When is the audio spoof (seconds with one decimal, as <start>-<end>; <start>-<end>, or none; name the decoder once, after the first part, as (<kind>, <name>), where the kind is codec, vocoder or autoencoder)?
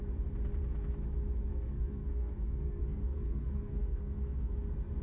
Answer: 1.5-4.5 (codec, SNAC)